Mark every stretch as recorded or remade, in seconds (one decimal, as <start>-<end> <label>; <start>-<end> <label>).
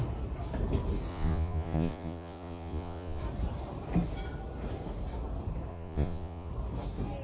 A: 0.0-1.1 recorded; 1.1-3.2 remade; 3.2-5.7 recorded; 5.7-6.5 remade; 6.5-7.2 recorded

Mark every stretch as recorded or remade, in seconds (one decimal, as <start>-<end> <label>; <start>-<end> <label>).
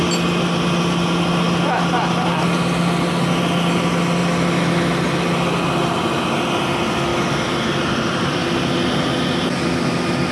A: 0.0-10.3 recorded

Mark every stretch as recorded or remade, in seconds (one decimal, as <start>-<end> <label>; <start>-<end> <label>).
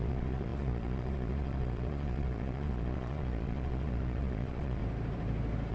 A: 0.0-4.8 remade; 4.8-5.7 recorded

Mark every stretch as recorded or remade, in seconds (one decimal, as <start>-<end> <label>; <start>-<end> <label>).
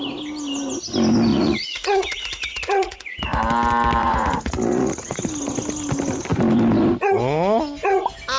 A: 0.0-1.3 recorded; 1.3-3.4 remade; 3.4-4.0 recorded; 4.0-5.2 remade; 5.2-8.4 recorded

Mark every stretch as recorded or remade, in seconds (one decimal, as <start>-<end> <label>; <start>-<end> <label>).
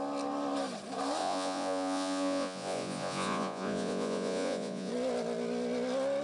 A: 0.0-1.2 recorded; 1.2-4.9 remade; 4.9-6.2 recorded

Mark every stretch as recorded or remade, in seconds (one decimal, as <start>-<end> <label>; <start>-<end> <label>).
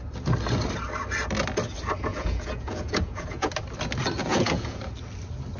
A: 0.0-2.1 recorded; 2.1-3.5 remade; 3.5-4.2 recorded; 4.2-4.8 remade; 4.8-5.6 recorded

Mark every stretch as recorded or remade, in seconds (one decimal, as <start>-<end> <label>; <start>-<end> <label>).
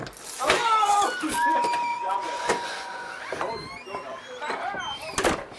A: 0.0-1.9 recorded; 1.9-3.1 remade; 3.1-5.6 recorded